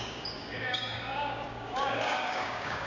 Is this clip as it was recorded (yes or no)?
no